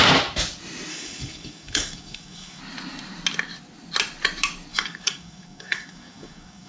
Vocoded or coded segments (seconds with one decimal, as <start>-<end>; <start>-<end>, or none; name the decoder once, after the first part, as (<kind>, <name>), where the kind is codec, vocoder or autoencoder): 0.9-2.6 (codec, DAC); 4.7-6.7